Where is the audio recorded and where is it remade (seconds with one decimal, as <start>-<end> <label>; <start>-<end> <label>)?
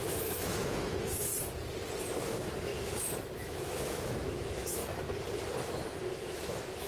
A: 0.0-1.3 remade; 1.3-2.2 recorded; 2.2-2.7 remade; 2.7-3.4 recorded; 3.4-4.8 remade; 4.8-5.6 recorded; 5.6-6.9 remade